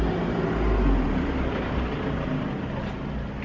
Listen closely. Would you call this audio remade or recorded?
recorded